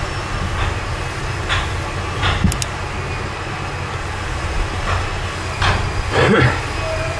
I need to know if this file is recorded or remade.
recorded